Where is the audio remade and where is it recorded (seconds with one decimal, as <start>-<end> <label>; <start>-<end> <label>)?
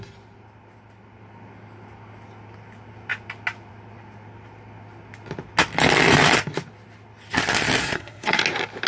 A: 0.0-7.8 recorded; 7.8-8.4 remade; 8.4-8.9 recorded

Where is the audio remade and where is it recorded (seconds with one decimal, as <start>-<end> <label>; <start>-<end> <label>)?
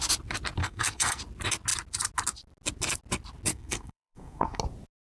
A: 0.0-0.6 recorded; 0.6-1.2 remade; 1.2-3.5 recorded; 3.5-4.6 remade; 4.6-5.1 recorded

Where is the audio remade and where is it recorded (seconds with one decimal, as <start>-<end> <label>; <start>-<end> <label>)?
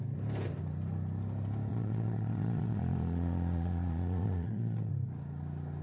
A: 0.0-1.7 recorded; 1.7-4.9 remade; 4.9-5.8 recorded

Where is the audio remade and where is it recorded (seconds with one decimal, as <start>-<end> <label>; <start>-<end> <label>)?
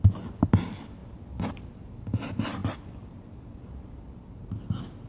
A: 0.0-5.1 recorded